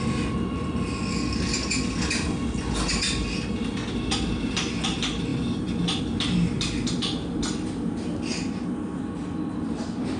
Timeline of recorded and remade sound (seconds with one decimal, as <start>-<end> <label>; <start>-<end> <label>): 0.0-10.2 recorded